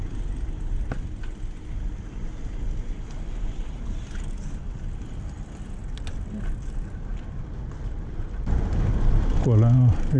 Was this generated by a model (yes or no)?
no